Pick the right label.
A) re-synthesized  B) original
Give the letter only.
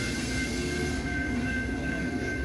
A